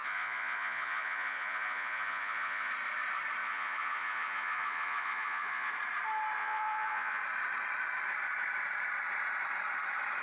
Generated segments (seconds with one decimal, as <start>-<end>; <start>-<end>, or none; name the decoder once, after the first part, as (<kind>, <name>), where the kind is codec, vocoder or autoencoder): 0.0-2.7 (vocoder, Vocos); 3.4-5.7; 6.4-7.2